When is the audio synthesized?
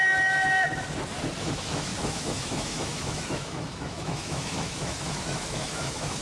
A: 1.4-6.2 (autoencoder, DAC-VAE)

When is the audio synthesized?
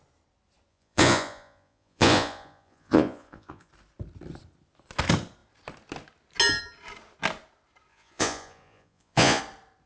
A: 0.7-3.7 (vocoder, Vocos); 7.9-9.4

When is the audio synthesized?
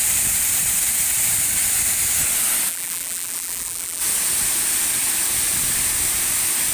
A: 2.7-4.0 (vocoder, BigVGAN v2)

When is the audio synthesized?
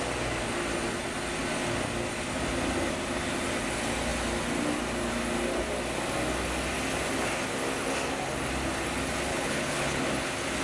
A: 9.3-10.0 (codec, HILCodec)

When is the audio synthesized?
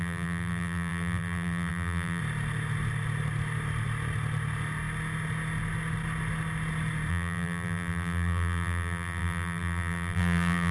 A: 0.0-2.2 (vocoder, BigVGAN v2); 7.1-10.7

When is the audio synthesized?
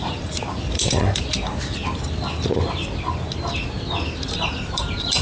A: 0.0-1.8 (vocoder, BigVGAN v2); 4.2-5.2